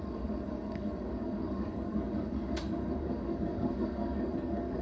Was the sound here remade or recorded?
remade